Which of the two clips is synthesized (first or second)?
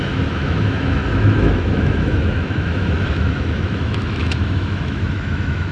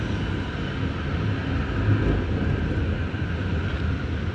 first